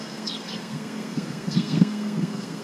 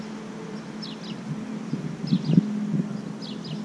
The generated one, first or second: first